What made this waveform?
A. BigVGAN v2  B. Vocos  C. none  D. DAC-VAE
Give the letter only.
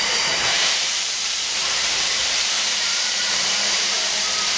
A